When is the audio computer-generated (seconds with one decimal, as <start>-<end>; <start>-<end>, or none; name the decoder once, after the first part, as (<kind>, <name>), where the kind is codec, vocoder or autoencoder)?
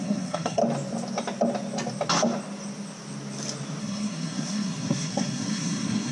0.0-0.6 (codec, SNAC); 3.8-6.1